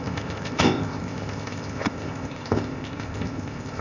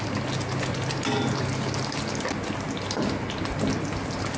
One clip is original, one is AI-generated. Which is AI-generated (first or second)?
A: first